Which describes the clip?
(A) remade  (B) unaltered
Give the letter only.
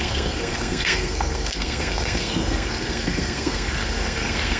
A